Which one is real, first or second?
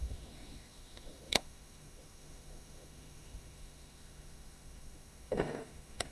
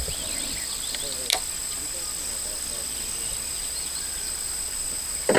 second